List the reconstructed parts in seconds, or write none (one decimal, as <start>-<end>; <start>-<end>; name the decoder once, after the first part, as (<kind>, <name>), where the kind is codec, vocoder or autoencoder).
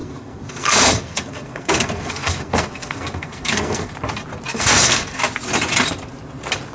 0.0-3.9 (codec, SNAC); 4.5-5.2